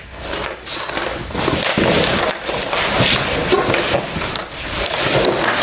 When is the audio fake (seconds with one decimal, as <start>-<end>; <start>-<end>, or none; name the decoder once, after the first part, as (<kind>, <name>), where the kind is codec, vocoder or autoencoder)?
none